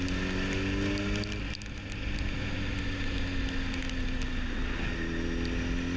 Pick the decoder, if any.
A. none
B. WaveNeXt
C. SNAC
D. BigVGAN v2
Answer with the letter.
A